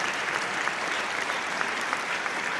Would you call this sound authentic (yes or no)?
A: no